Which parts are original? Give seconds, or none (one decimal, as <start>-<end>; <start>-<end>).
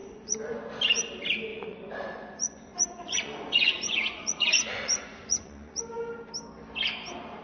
0.6-1.5; 5.8-7.4